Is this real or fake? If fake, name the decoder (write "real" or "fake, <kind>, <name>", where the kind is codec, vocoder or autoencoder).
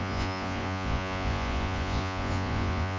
fake, vocoder, Vocos